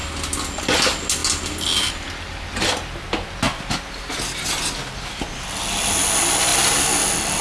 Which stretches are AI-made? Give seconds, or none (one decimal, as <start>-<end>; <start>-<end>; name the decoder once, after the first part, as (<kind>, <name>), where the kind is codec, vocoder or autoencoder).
none